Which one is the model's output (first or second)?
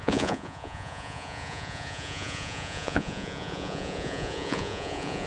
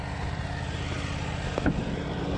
first